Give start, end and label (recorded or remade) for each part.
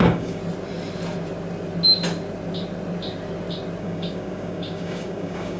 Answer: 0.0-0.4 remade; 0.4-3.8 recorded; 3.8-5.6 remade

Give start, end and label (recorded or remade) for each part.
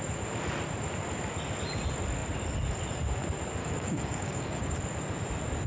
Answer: 0.0-3.6 recorded; 3.6-4.8 remade; 4.8-5.7 recorded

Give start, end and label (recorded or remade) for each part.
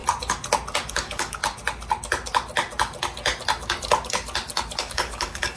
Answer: 0.0-0.9 recorded; 0.9-1.4 remade; 1.4-4.8 recorded; 4.8-5.6 remade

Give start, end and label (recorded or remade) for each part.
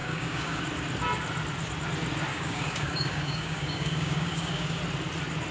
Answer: 0.0-0.6 remade; 0.6-2.3 recorded; 2.3-4.8 remade; 4.8-5.5 recorded